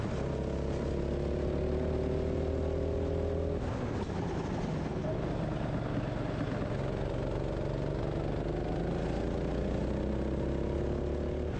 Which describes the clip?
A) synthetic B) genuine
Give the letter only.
B